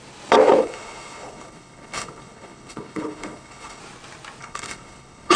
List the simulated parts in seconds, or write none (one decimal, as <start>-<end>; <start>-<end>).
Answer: 0.6-3.8; 4.4-5.4